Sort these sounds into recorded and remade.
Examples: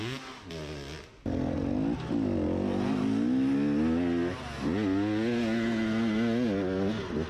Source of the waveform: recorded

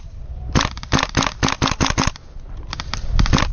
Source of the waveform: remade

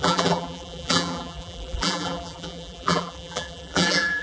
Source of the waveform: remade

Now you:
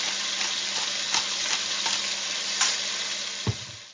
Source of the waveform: recorded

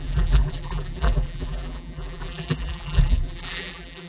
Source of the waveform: remade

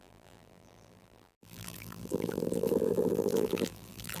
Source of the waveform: remade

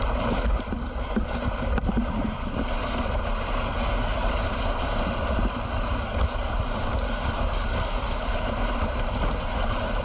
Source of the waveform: remade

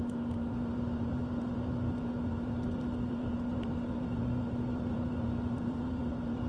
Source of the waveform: remade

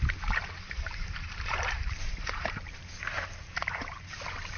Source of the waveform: remade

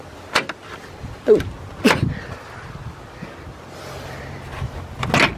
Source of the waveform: recorded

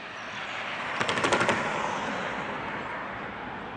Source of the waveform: recorded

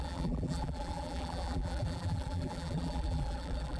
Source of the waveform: remade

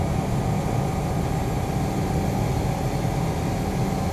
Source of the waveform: recorded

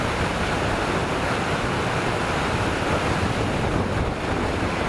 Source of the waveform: recorded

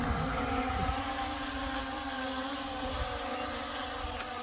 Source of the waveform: recorded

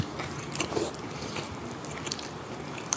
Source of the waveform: remade